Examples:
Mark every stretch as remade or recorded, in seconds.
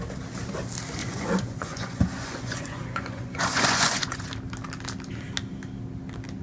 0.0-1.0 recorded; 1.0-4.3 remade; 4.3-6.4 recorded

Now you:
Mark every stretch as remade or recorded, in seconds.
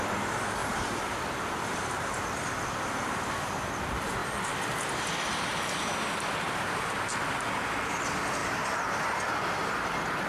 0.0-0.6 recorded; 0.6-2.1 remade; 2.1-8.4 recorded; 8.4-9.0 remade; 9.0-10.3 recorded